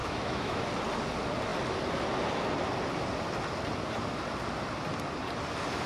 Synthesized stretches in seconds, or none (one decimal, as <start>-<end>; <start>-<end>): 0.0-0.6